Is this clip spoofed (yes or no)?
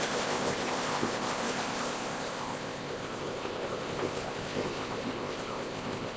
yes